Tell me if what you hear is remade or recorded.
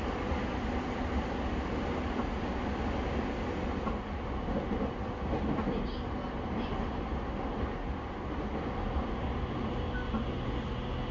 recorded